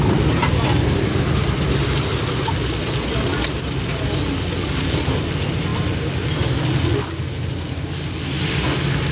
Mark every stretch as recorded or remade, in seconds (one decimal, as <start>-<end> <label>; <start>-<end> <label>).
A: 0.0-9.1 recorded